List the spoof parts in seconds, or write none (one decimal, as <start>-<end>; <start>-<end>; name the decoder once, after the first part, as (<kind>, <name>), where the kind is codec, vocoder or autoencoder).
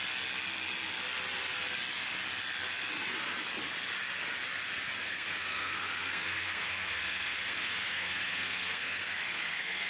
5.0-9.9 (codec, SNAC)